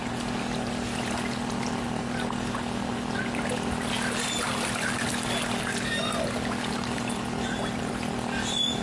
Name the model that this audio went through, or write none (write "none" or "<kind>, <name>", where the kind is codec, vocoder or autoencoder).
none